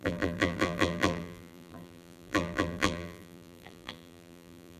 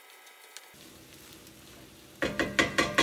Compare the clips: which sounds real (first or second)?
second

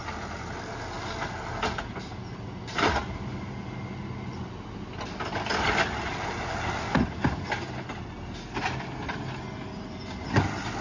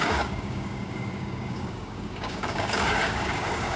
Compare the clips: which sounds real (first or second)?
first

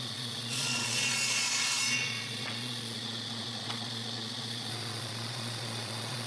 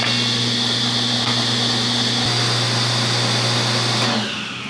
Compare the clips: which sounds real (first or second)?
second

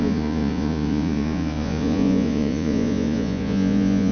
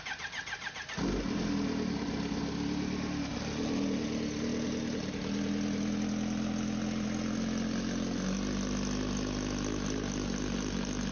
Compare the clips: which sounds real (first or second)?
second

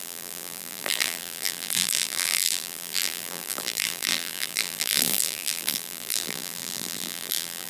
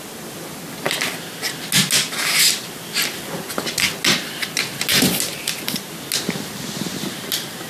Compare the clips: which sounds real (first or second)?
second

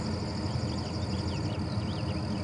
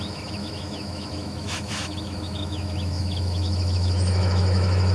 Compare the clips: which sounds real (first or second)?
first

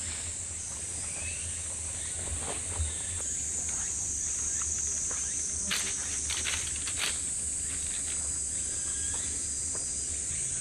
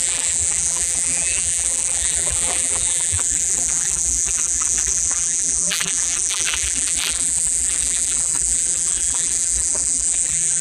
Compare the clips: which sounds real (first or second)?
first